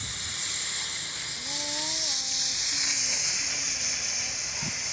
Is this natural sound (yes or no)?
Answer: yes